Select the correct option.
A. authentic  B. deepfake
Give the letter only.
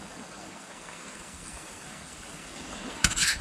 B